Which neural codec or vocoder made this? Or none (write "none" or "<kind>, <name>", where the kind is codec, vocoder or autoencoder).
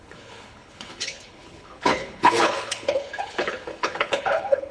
codec, HILCodec